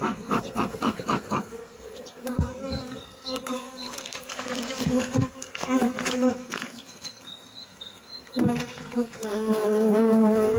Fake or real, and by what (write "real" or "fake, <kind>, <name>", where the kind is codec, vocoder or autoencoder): fake, codec, SNAC